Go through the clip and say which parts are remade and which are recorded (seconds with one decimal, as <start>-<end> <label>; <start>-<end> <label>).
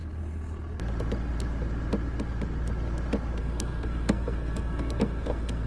0.0-3.4 recorded; 3.4-5.7 remade